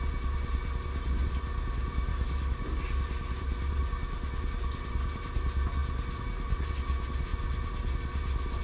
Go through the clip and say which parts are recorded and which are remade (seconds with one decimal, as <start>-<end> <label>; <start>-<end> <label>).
0.0-2.1 recorded; 2.1-2.8 remade; 2.8-8.6 recorded